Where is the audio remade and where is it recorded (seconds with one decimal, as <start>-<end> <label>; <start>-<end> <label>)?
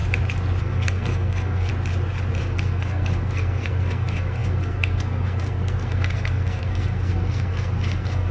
0.0-0.6 recorded; 0.6-1.7 remade; 1.7-2.4 recorded; 2.4-8.3 remade